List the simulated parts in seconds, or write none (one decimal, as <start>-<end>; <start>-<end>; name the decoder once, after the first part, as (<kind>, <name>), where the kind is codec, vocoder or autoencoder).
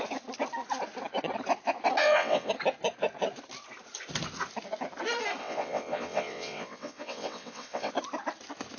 2.0-2.5 (vocoder, WaveNeXt); 5.4-7.9